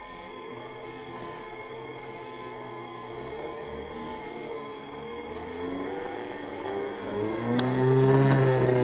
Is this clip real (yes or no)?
no